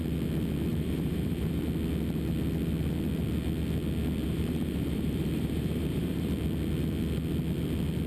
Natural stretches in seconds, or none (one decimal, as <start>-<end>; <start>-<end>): 0.0-0.7; 1.6-4.2; 6.3-8.1